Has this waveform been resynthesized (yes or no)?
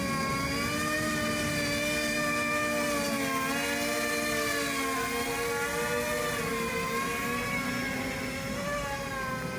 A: no